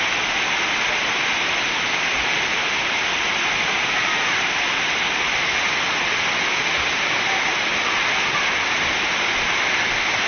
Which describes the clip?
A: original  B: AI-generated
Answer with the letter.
A